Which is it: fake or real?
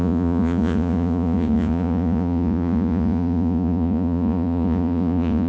fake